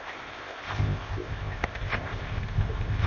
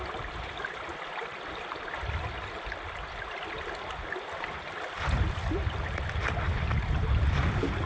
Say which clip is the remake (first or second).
first